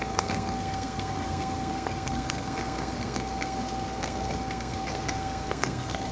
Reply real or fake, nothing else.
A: fake